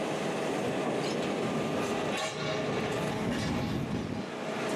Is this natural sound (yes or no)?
yes